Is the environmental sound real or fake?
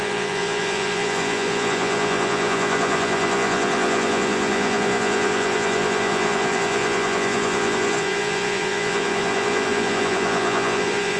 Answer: fake